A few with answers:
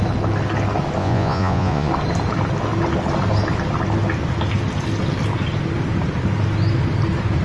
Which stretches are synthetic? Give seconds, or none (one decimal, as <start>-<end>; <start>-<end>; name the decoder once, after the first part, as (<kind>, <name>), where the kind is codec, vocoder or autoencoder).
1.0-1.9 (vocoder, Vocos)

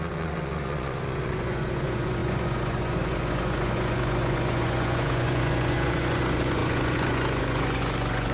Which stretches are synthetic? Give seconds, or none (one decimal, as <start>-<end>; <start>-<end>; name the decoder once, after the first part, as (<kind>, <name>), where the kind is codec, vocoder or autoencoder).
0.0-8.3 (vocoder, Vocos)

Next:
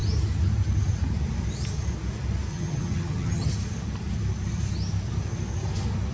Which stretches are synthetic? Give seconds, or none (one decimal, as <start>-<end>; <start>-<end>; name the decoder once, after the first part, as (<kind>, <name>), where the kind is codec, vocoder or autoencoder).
2.5-3.5 (vocoder, HiFi-GAN)

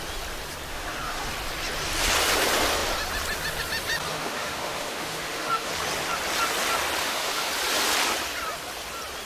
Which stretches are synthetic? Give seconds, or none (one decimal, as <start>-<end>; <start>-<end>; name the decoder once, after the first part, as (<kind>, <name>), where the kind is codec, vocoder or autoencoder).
0.7-1.3 (autoencoder, DAC-VAE); 4.1-5.7; 7.0-7.5